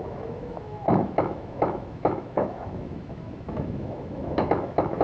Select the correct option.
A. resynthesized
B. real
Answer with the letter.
A